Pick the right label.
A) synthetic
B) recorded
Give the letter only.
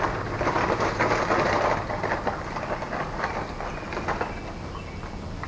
B